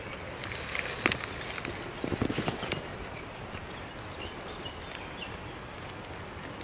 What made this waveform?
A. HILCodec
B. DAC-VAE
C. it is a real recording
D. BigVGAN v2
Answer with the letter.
C